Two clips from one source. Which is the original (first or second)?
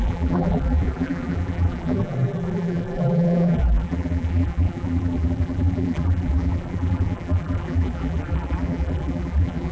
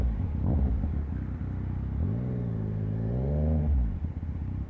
second